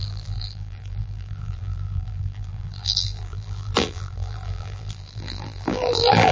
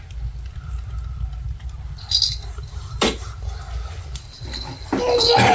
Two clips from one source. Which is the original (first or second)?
second